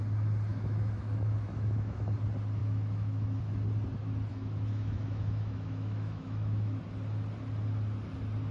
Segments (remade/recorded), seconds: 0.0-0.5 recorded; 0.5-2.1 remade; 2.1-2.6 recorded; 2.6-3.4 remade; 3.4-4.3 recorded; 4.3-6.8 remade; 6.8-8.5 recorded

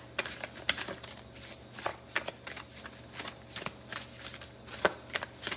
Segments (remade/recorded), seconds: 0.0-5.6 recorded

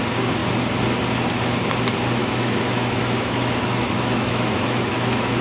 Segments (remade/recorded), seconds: 0.0-2.2 recorded; 2.2-5.4 remade

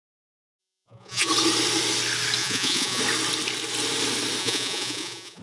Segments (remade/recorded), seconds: 0.0-0.6 recorded; 0.6-1.3 remade; 1.3-2.4 recorded; 2.4-3.0 remade; 3.0-4.4 recorded; 4.4-5.4 remade